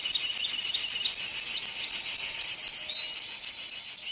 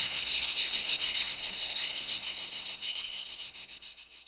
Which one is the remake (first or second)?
second